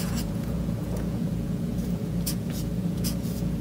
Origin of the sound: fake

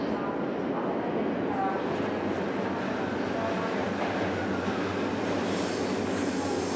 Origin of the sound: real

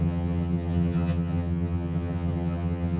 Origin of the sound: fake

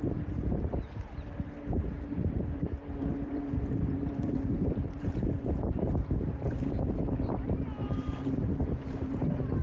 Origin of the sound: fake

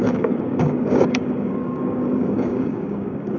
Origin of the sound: fake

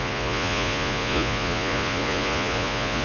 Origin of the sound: fake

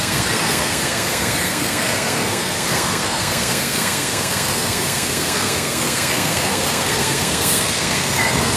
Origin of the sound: fake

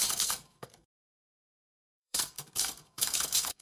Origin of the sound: fake